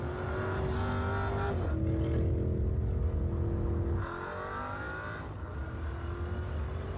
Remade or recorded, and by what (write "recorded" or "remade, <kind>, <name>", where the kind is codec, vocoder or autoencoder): recorded